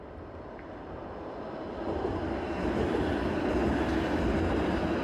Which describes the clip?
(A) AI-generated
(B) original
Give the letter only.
B